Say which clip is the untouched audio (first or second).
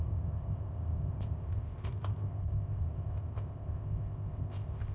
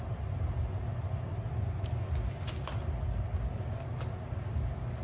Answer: second